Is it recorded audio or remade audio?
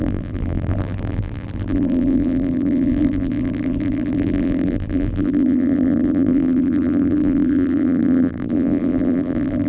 remade